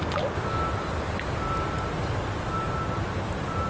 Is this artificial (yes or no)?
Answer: no